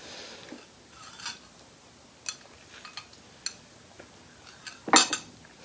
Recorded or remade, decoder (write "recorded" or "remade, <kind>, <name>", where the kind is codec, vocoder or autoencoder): recorded